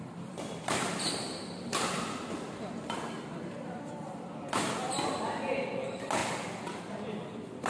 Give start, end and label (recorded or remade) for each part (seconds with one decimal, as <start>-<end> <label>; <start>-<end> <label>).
0.0-6.2 remade; 6.2-6.9 recorded; 6.9-7.7 remade